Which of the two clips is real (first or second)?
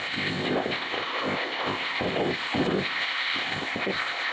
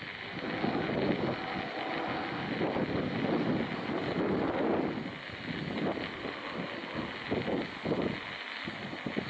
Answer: second